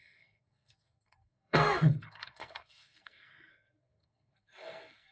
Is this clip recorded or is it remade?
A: remade